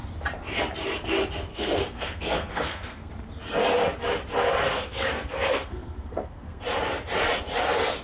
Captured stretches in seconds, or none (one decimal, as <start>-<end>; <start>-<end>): 0.0-1.5; 3.1-4.7; 6.6-8.0